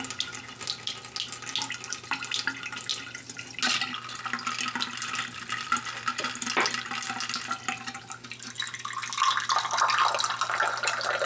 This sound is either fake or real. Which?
real